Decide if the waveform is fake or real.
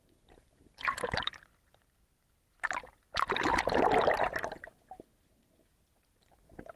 real